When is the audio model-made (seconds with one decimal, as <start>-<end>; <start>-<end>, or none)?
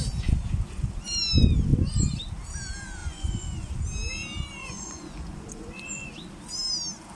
3.0-3.8; 4.6-6.1